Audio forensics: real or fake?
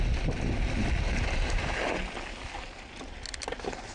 real